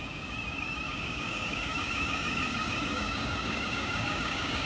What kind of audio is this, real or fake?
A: fake